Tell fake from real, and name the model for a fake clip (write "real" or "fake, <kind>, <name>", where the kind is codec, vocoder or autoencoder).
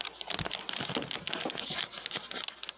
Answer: real